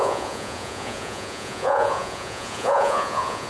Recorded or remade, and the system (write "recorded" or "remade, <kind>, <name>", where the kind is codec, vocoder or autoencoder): remade, vocoder, Vocos